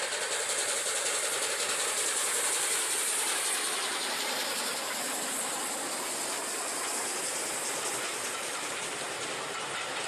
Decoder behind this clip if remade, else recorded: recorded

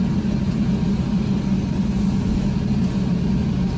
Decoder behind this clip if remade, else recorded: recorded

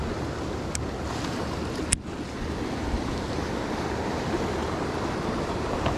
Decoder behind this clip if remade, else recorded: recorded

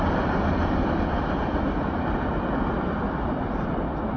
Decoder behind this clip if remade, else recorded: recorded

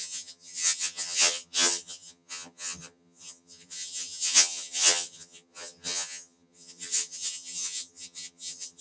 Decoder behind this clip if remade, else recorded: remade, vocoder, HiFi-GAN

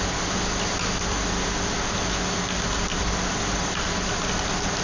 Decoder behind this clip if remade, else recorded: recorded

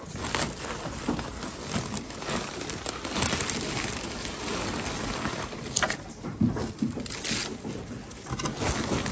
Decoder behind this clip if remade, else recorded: recorded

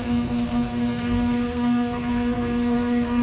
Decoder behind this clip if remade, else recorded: remade, codec, SNAC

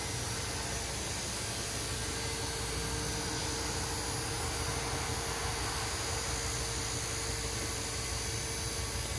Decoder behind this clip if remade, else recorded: recorded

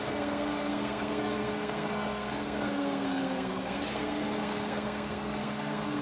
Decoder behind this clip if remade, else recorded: remade, codec, SNAC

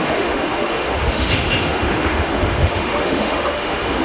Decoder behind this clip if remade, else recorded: remade, autoencoder, DAC-VAE